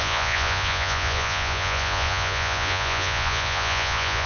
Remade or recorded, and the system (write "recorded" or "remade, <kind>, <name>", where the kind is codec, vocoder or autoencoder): remade, vocoder, Vocos